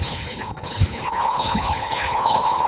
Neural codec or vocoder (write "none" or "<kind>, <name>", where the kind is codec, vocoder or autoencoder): codec, HILCodec